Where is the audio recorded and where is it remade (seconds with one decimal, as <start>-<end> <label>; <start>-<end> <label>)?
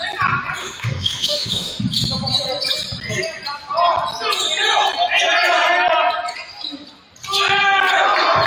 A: 0.0-0.6 recorded; 0.6-1.8 remade; 1.8-8.5 recorded